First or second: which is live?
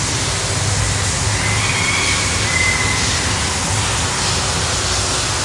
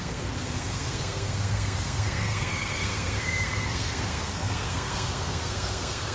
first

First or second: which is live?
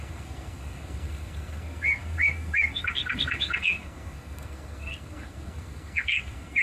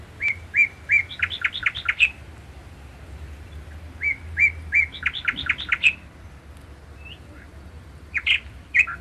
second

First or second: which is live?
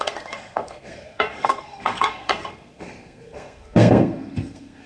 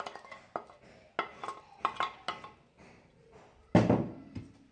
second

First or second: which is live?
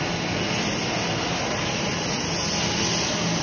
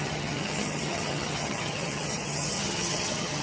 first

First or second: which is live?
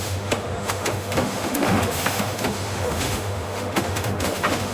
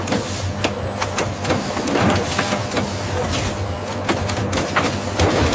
second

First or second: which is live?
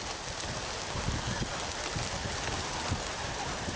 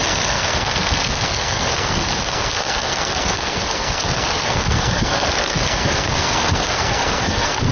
first